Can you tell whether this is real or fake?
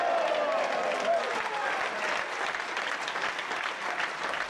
real